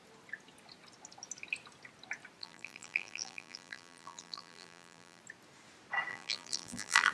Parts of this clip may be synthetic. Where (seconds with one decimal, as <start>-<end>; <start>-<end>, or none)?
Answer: 2.4-5.2; 6.1-7.1